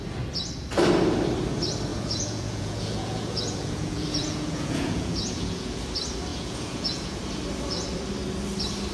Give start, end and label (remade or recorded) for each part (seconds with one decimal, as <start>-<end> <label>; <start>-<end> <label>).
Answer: 0.0-1.9 recorded; 1.9-5.8 remade; 5.8-6.3 recorded; 6.3-7.2 remade; 7.2-8.9 recorded